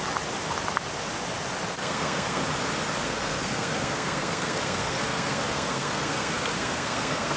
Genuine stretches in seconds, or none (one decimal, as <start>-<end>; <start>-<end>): 0.0-1.8; 2.4-3.0